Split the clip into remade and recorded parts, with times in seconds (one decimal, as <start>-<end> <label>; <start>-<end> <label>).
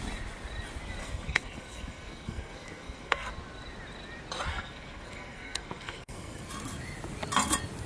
0.0-1.0 recorded; 1.0-3.3 remade; 3.3-4.5 recorded; 4.5-6.5 remade; 6.5-7.9 recorded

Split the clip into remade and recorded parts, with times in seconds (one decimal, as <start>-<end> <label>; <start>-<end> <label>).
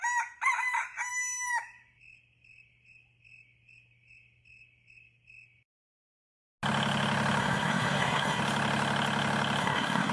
0.0-7.4 recorded; 7.4-8.4 remade; 8.4-9.6 recorded; 9.6-10.1 remade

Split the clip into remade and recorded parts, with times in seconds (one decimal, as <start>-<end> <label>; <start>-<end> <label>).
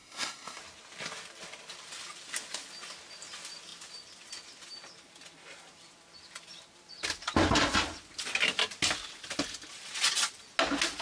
0.0-0.6 remade; 0.6-11.0 recorded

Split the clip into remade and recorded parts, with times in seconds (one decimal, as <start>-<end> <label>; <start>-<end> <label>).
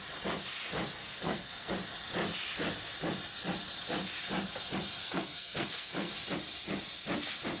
0.0-1.0 recorded; 1.0-1.7 remade; 1.7-5.0 recorded; 5.0-6.1 remade; 6.1-7.6 recorded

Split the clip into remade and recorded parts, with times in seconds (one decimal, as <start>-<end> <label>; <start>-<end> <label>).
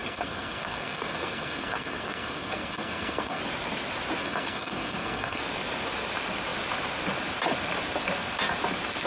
0.0-3.4 remade; 3.4-4.2 recorded; 4.2-5.4 remade; 5.4-9.1 recorded